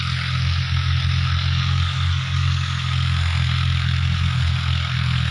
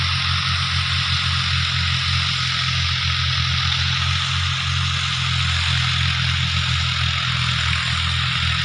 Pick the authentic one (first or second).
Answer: second